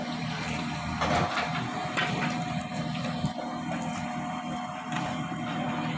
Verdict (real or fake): fake